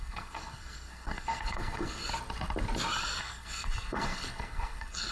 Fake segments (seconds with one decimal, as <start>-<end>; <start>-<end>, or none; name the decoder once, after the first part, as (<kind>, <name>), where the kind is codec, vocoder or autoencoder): 0.0-2.0 (codec, SNAC); 3.2-5.1